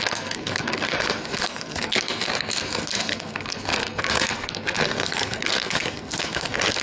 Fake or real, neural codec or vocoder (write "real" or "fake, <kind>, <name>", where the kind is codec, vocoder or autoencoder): fake, codec, SNAC